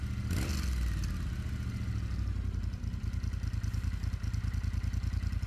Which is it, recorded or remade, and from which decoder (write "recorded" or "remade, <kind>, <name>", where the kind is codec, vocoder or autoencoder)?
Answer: recorded